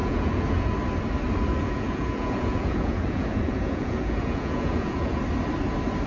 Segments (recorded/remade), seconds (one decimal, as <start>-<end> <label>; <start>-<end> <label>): 0.0-0.7 remade; 0.7-1.5 recorded; 1.5-5.2 remade; 5.2-6.1 recorded